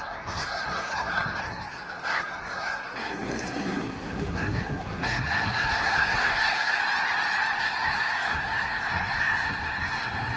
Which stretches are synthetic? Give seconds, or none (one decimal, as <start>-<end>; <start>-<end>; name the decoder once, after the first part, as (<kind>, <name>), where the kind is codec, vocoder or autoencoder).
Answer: 0.0-6.8 (codec, SNAC); 7.6-10.4